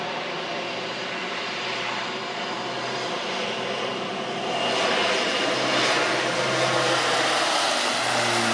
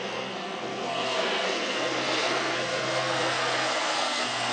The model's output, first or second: second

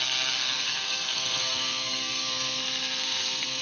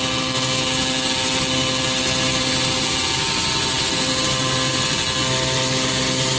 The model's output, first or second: first